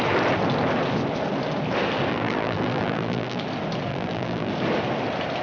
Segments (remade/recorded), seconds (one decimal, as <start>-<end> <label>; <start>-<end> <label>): 0.0-2.1 recorded; 2.1-3.4 remade; 3.4-3.9 recorded; 3.9-4.5 remade; 4.5-5.4 recorded